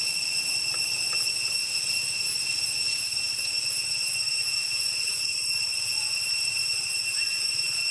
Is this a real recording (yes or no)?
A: yes